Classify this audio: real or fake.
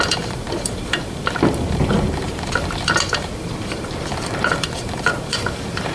fake